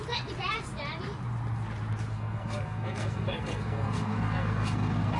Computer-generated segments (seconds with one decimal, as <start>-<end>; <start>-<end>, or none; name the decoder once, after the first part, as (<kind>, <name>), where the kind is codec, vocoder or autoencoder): 2.1-5.2 (codec, SNAC)